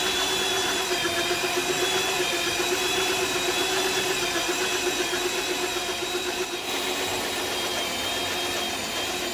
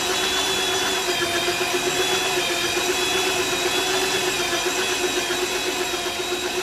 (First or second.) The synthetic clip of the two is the first